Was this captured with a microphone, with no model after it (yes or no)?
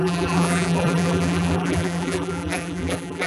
no